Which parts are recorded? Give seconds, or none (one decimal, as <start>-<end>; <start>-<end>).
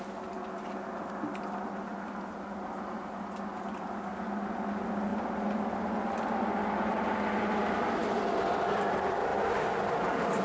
0.0-10.4